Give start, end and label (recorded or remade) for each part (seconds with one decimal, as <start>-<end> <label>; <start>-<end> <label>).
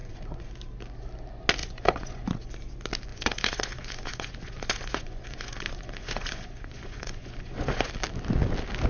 0.0-0.5 remade; 0.5-1.6 recorded; 1.6-2.5 remade; 2.5-3.1 recorded; 3.1-7.9 remade; 7.9-8.9 recorded